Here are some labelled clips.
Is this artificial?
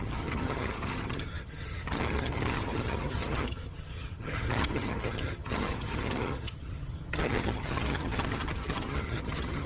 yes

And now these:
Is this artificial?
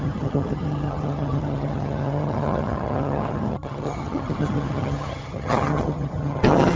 yes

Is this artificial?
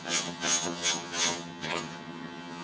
yes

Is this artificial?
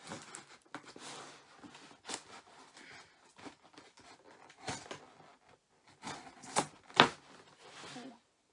no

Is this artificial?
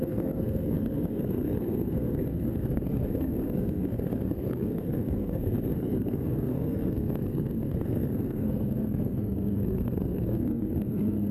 yes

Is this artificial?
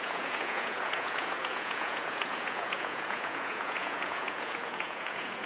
yes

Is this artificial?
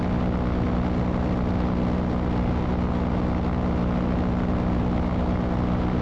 no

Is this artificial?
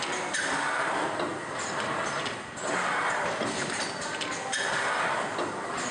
no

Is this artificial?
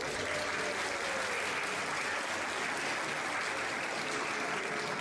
no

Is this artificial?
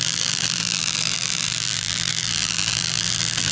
yes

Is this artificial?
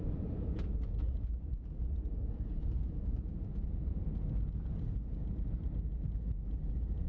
yes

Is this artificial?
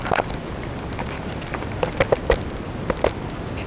no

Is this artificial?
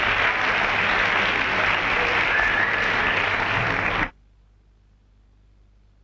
no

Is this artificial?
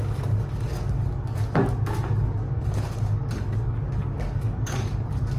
yes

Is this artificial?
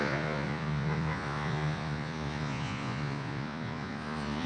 yes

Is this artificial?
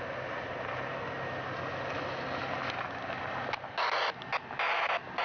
no